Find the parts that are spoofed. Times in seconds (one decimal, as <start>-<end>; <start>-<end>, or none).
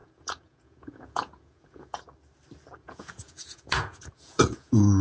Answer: 0.0-2.0; 2.8-5.0